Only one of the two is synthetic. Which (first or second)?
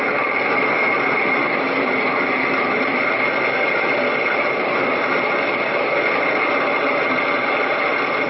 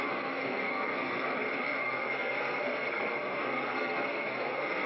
second